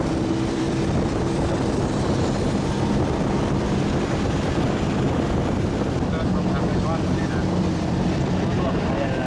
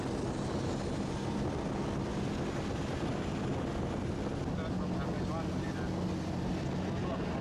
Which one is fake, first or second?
first